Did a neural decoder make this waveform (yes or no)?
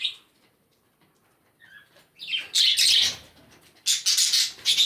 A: no